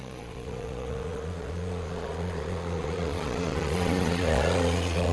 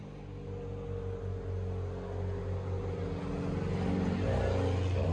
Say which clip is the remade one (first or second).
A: first